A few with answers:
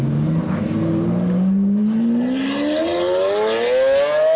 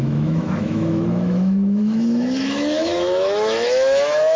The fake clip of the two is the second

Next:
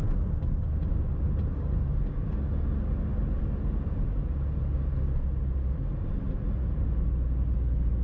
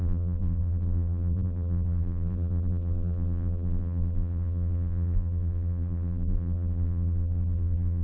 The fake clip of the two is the second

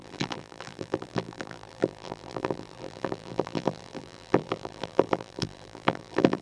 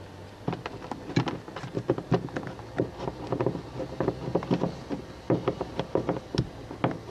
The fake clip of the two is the first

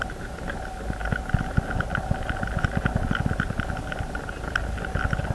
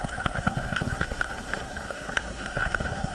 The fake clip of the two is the second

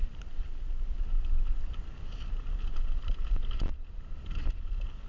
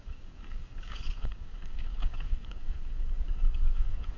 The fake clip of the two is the second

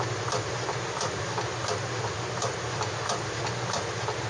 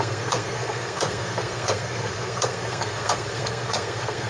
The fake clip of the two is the second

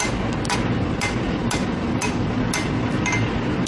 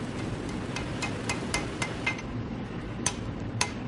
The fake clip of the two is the second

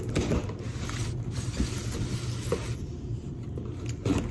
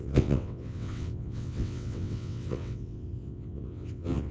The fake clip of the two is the second